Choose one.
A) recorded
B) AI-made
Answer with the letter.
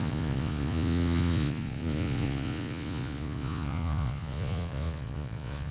B